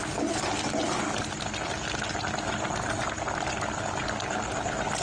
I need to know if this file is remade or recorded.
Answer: recorded